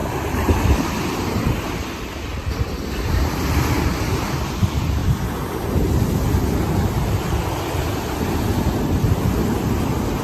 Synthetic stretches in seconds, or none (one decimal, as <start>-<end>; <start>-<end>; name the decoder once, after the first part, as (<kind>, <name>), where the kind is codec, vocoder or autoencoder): 0.0-1.0 (vocoder, BigVGAN v2)